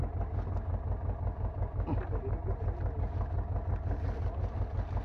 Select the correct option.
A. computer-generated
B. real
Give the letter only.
B